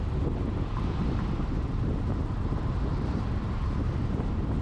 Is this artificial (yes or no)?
no